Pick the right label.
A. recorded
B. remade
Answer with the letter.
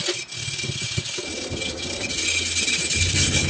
A